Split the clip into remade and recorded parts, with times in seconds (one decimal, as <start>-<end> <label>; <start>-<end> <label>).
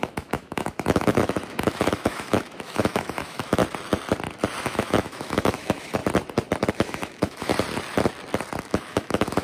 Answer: 0.0-3.6 remade; 3.6-4.6 recorded; 4.6-6.0 remade; 6.0-6.7 recorded; 6.7-7.5 remade; 7.5-8.6 recorded; 8.6-9.4 remade